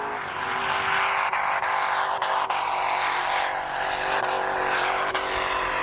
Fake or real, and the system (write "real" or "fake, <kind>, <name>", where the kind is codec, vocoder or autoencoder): real